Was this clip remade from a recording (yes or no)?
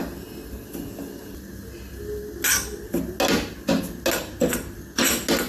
no